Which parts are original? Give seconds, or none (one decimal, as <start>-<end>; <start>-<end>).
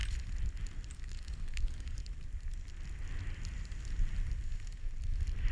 0.0-0.9; 2.0-5.5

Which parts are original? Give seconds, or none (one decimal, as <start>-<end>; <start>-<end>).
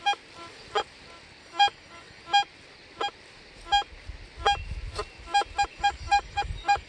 0.0-1.4; 2.2-5.7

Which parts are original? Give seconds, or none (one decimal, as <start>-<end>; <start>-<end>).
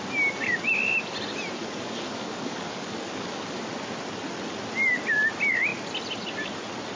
0.0-1.6; 3.6-7.0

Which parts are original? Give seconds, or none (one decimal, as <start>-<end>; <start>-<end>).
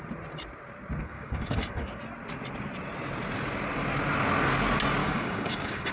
0.0-1.0; 2.0-5.0